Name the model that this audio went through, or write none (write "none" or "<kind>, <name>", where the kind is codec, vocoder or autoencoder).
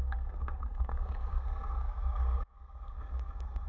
codec, SNAC